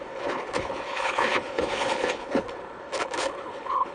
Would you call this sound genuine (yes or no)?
no